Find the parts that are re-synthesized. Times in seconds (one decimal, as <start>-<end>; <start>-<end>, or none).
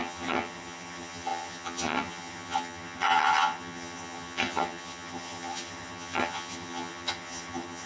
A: 0.0-7.9